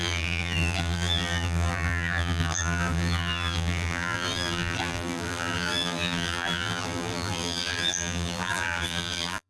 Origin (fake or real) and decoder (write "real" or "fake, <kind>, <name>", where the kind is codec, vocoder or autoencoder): fake, vocoder, BigVGAN v2